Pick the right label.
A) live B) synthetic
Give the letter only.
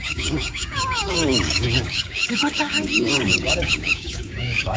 B